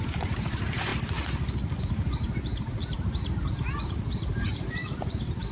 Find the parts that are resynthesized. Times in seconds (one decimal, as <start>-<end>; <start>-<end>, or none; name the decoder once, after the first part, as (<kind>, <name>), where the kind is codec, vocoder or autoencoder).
0.0-0.9 (vocoder, BigVGAN v2); 1.8-5.5